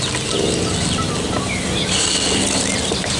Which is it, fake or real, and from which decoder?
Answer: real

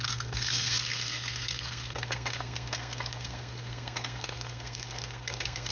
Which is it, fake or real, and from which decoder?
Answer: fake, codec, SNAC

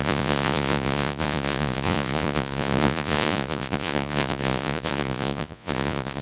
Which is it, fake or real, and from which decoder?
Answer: fake, vocoder, Vocos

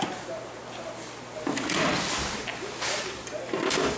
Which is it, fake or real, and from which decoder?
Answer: real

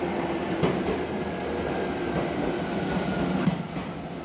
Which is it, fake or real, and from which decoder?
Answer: real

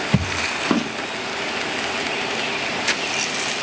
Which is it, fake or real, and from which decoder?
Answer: real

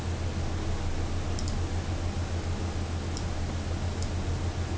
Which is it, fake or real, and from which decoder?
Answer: real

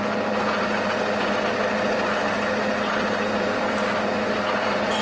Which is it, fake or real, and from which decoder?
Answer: real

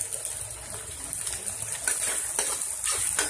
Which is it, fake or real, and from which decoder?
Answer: real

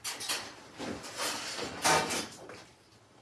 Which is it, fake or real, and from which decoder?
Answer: fake, vocoder, BigVGAN v2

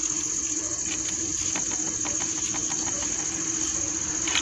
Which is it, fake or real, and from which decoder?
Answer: real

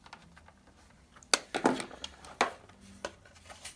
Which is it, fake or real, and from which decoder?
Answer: real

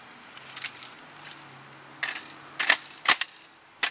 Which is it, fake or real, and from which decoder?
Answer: real